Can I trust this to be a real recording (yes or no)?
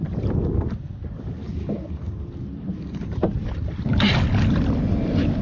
yes